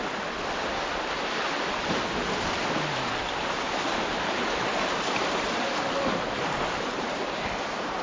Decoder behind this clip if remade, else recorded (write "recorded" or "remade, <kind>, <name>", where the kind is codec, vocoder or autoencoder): recorded